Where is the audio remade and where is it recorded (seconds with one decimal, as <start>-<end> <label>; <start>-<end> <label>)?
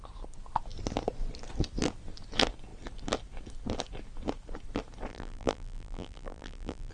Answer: 0.0-5.1 recorded; 5.1-6.9 remade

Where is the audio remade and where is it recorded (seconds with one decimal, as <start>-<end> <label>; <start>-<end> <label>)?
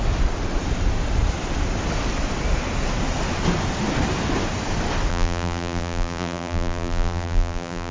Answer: 0.0-5.1 recorded; 5.1-7.9 remade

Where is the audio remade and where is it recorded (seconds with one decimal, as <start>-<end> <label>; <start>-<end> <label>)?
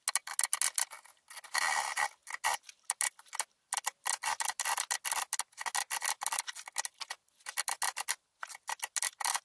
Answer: 0.0-9.4 recorded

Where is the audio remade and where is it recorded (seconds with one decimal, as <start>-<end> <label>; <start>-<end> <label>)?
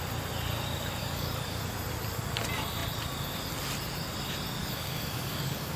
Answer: 0.0-1.0 recorded; 1.0-1.6 remade; 1.6-4.6 recorded; 4.6-5.8 remade